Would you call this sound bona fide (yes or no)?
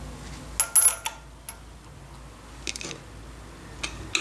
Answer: yes